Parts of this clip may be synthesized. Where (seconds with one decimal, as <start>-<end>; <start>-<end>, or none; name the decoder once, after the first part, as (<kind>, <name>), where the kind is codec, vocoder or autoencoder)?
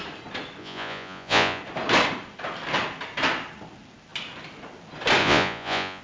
0.6-1.6 (vocoder, Vocos); 5.2-6.0